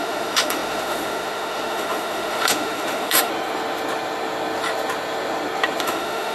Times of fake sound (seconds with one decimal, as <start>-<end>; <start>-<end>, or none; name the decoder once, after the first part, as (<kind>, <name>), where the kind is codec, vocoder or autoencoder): 0.0-3.3 (autoencoder, DAC-VAE); 5.8-6.3